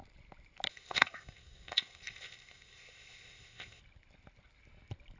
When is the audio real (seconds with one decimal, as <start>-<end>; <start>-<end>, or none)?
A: 0.0-0.7; 3.8-5.2